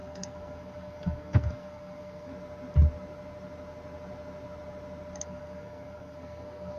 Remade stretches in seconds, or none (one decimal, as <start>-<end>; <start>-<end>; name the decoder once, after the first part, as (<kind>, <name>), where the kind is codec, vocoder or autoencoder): 0.0-2.3 (codec, SNAC); 5.2-6.8